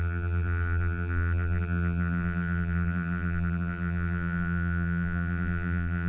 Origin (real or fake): fake